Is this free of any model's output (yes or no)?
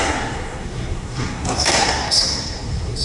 no